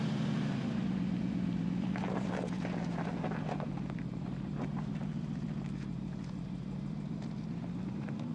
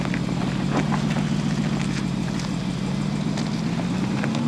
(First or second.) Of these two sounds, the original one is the second